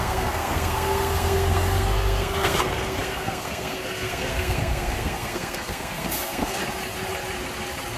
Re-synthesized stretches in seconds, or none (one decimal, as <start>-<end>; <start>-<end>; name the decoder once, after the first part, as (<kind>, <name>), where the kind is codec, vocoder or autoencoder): 0.0-6.6 (codec, SNAC)